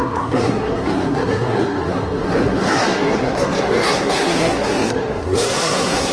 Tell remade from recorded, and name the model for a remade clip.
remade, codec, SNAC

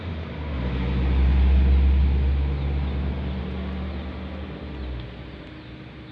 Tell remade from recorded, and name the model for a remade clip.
recorded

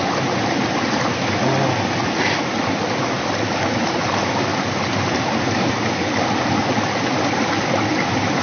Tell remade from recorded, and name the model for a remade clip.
recorded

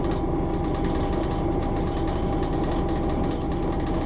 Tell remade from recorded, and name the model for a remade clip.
recorded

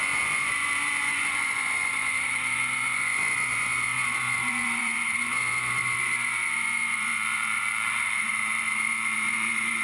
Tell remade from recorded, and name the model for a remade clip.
remade, vocoder, Vocos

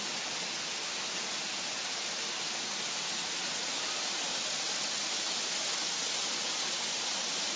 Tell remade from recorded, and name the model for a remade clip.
recorded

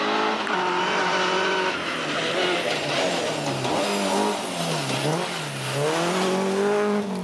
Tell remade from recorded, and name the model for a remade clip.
recorded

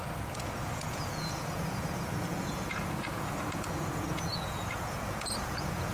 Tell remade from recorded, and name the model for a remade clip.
remade, vocoder, Vocos